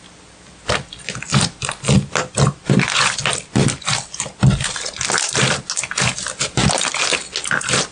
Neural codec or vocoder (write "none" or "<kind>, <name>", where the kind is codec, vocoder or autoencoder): none